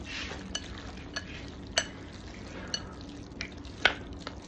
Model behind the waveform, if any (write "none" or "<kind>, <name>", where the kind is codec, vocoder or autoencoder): none